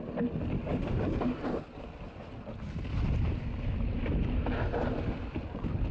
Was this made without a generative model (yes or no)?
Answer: yes